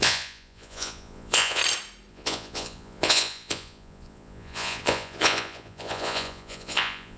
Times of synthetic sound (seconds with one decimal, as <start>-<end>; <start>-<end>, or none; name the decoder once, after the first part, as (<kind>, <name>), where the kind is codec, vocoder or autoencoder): 0.0-1.6 (vocoder, Vocos); 2.1-7.2